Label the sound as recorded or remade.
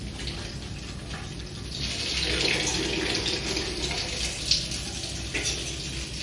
recorded